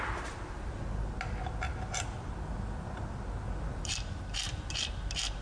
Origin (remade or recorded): recorded